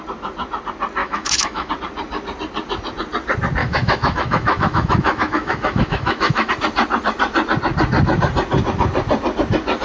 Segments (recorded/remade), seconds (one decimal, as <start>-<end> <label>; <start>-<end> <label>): 0.0-1.0 recorded; 1.0-1.7 remade; 1.7-3.6 recorded; 3.6-6.5 remade; 6.5-9.8 recorded